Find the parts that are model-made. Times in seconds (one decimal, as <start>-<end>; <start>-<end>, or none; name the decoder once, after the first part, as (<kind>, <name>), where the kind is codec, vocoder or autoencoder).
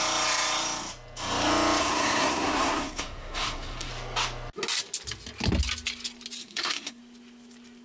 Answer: 1.8-3.9 (codec, SNAC); 6.4-7.0